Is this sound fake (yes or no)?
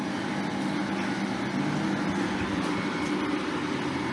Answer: no